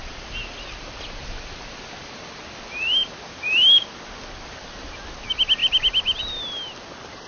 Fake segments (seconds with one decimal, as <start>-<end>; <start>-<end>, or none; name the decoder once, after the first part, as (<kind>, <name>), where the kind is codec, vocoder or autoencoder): none